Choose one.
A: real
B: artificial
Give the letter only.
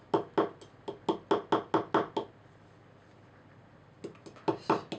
A